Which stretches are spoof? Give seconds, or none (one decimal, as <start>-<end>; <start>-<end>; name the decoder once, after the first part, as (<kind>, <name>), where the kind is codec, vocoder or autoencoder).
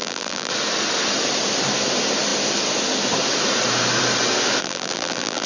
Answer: 0.0-0.5 (vocoder, BigVGAN v2); 4.6-5.5